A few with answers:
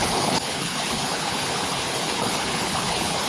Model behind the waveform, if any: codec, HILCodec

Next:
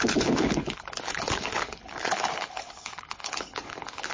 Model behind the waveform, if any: codec, HILCodec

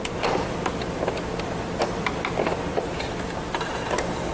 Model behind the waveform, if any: none